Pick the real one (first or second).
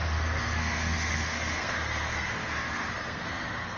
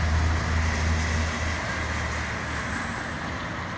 second